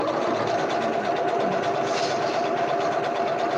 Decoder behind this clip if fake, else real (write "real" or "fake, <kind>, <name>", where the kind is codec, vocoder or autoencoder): real